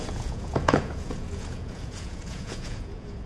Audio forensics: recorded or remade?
remade